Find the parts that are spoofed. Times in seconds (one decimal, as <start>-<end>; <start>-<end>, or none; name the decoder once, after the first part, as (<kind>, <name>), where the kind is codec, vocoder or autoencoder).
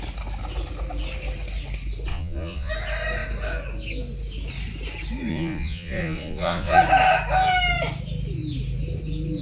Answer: 2.1-2.7 (vocoder, Vocos); 5.3-6.8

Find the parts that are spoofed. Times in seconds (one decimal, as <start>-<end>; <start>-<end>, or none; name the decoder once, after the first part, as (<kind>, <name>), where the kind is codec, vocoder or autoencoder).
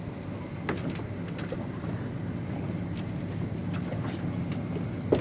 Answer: none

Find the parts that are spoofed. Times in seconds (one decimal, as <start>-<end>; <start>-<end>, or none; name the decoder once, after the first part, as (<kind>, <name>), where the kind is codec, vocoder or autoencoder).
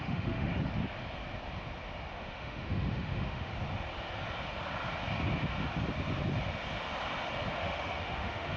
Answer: 0.0-0.5 (autoencoder, DAC-VAE); 2.1-3.5; 7.5-8.6